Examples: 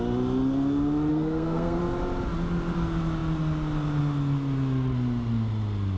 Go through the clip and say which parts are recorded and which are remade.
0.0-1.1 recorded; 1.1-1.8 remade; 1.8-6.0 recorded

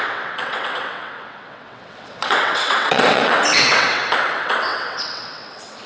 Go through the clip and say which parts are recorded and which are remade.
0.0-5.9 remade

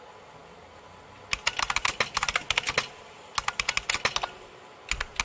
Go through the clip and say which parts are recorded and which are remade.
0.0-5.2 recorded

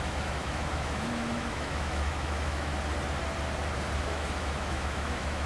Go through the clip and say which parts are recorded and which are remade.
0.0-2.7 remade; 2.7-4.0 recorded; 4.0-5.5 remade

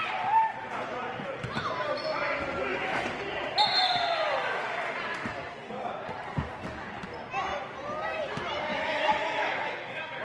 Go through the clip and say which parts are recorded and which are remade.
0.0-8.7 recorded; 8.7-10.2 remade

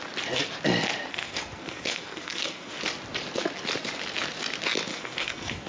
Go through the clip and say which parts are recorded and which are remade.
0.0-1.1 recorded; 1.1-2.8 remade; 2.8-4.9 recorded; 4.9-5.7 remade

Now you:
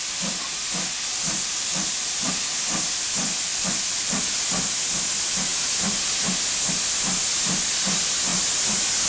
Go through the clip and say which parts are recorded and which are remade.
0.0-1.1 recorded; 1.1-2.3 remade; 2.3-3.5 recorded; 3.5-4.2 remade; 4.2-9.1 recorded

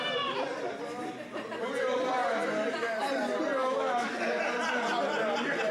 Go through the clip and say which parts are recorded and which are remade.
0.0-3.6 recorded; 3.6-4.1 remade; 4.1-5.7 recorded